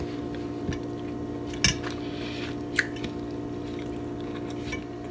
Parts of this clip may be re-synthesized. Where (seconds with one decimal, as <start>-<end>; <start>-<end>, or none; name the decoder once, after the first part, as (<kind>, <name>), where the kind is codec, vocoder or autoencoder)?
none